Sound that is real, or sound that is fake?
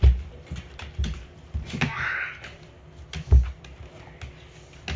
real